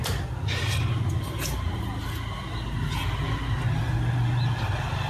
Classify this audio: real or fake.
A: real